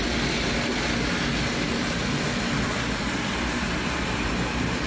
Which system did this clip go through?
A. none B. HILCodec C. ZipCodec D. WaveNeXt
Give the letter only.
A